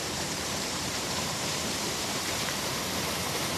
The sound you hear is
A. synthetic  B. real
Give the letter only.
A